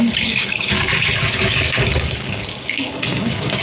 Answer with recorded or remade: remade